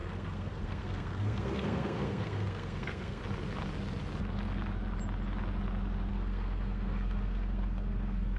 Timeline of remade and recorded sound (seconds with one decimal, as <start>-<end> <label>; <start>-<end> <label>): 0.0-3.2 remade; 3.2-6.1 recorded; 6.1-8.4 remade